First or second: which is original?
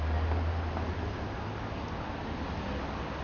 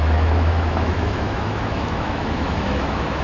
first